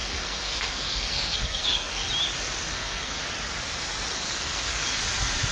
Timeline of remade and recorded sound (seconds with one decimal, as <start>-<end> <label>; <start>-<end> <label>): 0.0-2.1 remade; 2.1-2.7 recorded; 2.7-3.2 remade; 3.2-4.1 recorded; 4.1-5.0 remade; 5.0-5.5 recorded